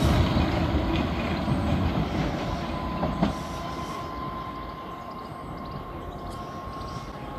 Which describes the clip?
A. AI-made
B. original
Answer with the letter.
B